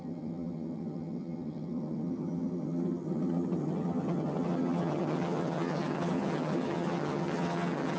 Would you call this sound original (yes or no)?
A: no